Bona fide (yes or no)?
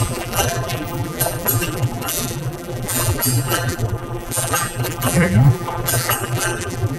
no